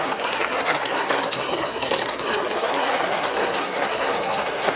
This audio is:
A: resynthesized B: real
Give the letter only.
A